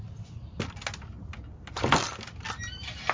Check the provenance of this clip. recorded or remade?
recorded